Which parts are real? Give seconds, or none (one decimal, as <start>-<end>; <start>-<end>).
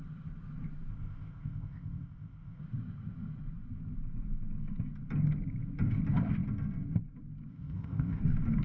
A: 0.0-0.9; 2.6-7.5; 8.2-8.6